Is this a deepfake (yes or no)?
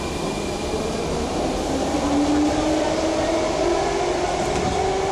no